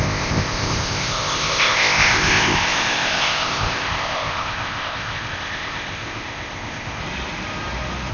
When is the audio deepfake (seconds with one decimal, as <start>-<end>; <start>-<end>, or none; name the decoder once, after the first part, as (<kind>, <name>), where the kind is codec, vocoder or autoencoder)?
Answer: 0.0-7.0 (codec, ZipCodec)